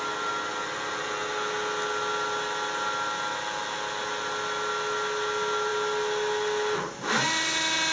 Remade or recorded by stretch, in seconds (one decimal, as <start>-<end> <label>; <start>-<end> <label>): 0.0-7.9 recorded